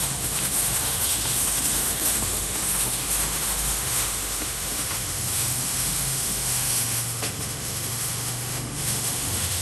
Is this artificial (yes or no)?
yes